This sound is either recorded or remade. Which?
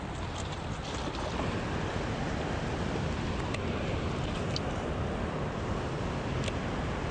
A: recorded